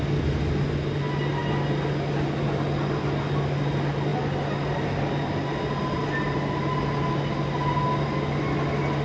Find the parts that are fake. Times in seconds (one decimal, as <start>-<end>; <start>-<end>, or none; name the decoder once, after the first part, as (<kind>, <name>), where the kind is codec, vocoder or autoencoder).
none